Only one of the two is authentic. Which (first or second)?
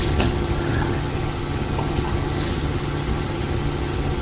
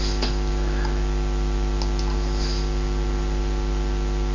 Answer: second